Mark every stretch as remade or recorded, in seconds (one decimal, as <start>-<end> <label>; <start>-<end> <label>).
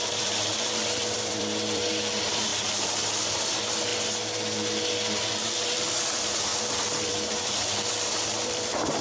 0.0-2.5 remade; 2.5-3.5 recorded; 3.5-3.9 remade; 3.9-5.3 recorded; 5.3-9.0 remade